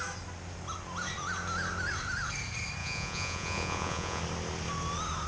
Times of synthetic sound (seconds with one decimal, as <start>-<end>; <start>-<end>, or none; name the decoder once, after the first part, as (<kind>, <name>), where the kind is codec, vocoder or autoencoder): 2.8-4.2 (vocoder, Vocos)